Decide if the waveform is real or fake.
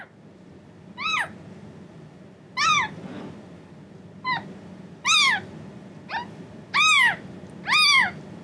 real